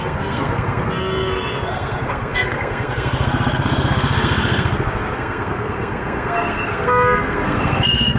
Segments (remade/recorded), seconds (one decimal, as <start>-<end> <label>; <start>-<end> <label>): 0.0-8.2 remade